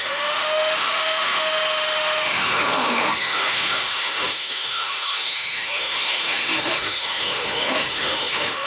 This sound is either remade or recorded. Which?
remade